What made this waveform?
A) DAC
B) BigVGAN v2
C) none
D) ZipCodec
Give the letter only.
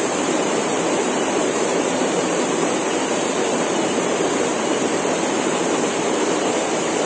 B